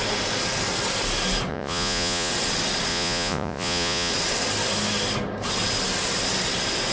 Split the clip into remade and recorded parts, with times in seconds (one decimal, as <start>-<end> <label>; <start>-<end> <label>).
0.0-1.5 recorded; 1.5-2.3 remade; 2.3-2.9 recorded; 2.9-4.1 remade; 4.1-6.9 recorded